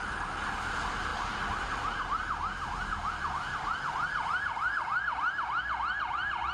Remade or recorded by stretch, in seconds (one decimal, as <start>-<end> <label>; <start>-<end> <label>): 0.0-6.5 recorded